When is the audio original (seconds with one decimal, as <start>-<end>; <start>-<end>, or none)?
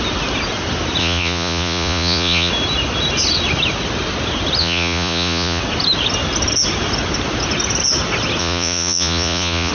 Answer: 0.0-1.0; 2.5-4.6; 5.6-8.4